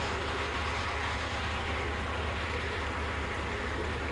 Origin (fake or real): real